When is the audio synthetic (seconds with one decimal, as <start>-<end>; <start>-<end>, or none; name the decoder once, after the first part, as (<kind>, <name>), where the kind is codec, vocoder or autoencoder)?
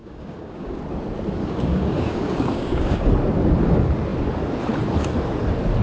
0.0-0.8 (codec, DAC); 1.4-3.1